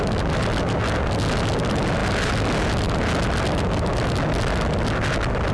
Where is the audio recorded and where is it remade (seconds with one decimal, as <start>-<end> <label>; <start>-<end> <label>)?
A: 0.0-5.5 recorded